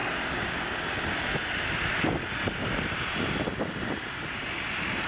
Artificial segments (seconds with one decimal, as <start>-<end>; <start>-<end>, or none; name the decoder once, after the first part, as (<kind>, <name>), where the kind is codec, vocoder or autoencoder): none